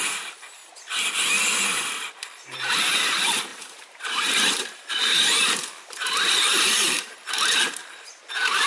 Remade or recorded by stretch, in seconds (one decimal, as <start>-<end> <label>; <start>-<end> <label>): 0.0-0.6 remade; 0.6-2.2 recorded; 2.2-8.7 remade